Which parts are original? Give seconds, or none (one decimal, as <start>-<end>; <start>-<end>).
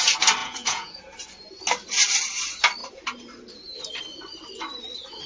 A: 0.0-0.4; 1.0-5.3